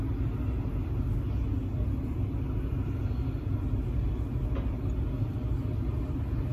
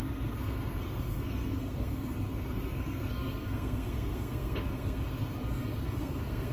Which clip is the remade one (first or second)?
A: second